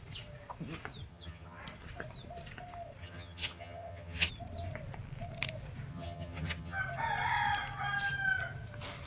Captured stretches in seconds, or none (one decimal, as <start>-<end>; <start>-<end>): 0.0-1.1; 1.6-3.0; 4.3-5.9; 6.8-9.1